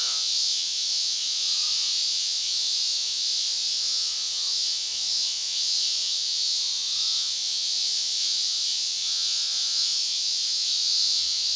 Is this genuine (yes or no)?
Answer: no